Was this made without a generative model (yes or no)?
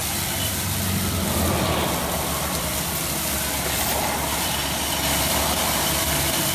no